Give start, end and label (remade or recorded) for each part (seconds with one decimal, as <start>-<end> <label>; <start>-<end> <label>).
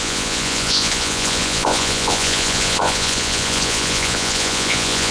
0.0-5.1 remade